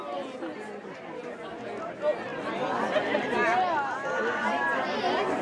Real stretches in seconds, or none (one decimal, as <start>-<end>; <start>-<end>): 0.0-4.4